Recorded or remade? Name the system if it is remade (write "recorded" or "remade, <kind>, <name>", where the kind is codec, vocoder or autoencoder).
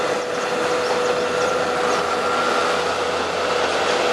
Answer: recorded